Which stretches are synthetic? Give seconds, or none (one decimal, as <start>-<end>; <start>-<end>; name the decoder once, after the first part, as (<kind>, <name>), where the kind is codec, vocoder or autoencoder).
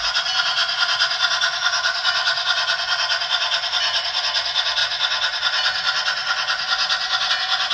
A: none